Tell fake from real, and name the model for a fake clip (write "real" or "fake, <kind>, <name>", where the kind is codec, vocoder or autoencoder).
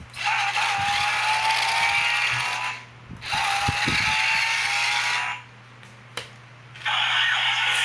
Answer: real